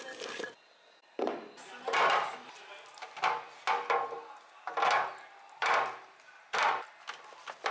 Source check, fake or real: real